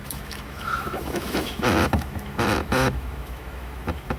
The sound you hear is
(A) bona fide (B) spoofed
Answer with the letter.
B